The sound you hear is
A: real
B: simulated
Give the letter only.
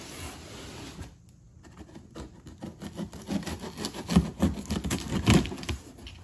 A